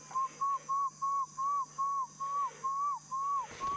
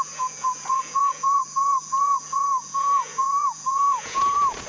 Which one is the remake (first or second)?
second